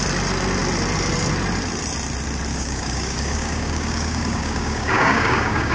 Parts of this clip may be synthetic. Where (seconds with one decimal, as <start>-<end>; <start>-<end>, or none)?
2.5-5.7